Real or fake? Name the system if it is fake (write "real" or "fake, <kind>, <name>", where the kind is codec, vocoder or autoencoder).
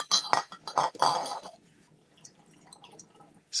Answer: real